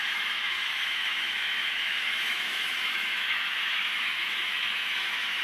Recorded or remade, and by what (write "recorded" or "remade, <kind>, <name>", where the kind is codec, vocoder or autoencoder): remade, autoencoder, DAC-VAE